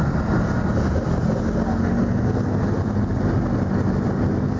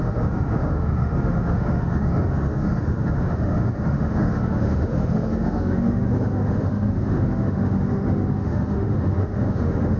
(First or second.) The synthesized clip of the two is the second